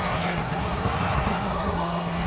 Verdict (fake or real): fake